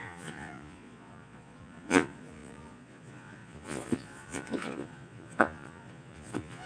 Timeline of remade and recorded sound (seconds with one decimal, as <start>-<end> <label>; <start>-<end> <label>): 0.0-6.7 remade